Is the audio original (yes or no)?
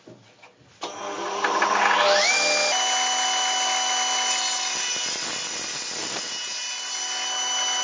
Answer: yes